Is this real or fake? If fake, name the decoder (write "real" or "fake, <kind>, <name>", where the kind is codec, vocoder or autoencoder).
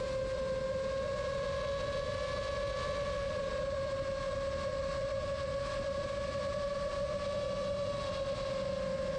real